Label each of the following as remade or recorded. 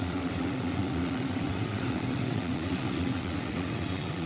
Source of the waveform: remade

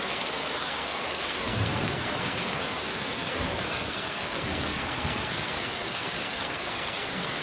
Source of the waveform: remade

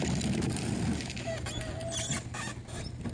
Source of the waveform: recorded